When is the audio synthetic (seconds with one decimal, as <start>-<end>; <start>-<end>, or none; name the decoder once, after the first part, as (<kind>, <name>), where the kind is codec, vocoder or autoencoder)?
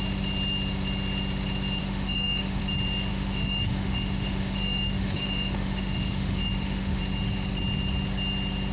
1.8-2.6 (autoencoder, DAC-VAE); 3.1-7.0